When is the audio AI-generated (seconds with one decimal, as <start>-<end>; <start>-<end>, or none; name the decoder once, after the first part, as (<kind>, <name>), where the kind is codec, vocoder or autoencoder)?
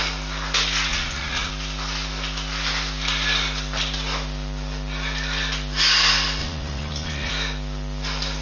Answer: 0.9-1.5 (vocoder, Vocos); 6.4-7.3